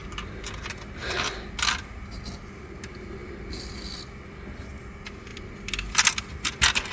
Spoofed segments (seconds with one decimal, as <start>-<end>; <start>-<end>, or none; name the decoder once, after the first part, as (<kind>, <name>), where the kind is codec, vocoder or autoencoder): none